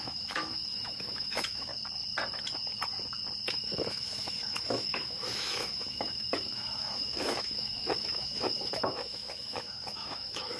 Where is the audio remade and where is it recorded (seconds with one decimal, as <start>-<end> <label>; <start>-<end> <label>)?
0.0-1.7 remade; 1.7-3.5 recorded; 3.5-10.6 remade